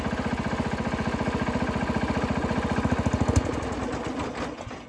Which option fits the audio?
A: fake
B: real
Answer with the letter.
B